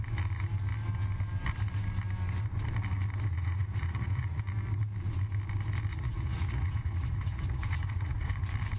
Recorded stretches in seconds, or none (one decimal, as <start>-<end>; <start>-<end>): 0.0-3.3; 4.4-5.9; 8.4-8.8